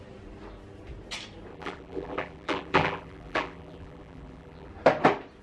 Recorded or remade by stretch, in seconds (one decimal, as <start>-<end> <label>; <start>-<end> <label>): 0.0-1.5 recorded; 1.5-4.7 remade; 4.7-5.4 recorded